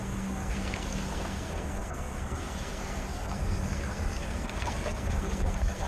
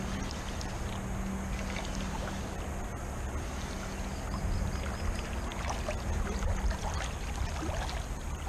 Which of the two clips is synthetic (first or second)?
first